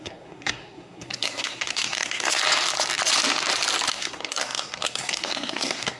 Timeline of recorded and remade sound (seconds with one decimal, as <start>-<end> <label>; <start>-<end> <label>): 0.0-2.4 remade; 2.4-3.9 recorded; 3.9-6.0 remade